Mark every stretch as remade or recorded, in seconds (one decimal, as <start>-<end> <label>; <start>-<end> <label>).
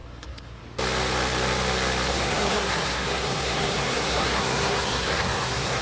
0.0-0.6 remade; 0.6-2.1 recorded; 2.1-5.8 remade